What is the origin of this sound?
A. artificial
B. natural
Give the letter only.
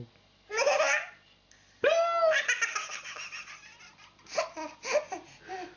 B